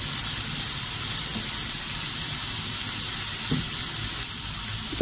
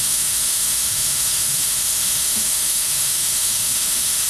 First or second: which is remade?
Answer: second